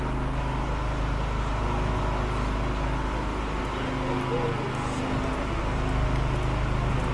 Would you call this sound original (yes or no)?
yes